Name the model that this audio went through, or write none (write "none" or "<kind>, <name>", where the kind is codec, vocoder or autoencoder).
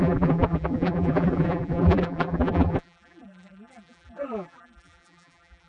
vocoder, BigVGAN v2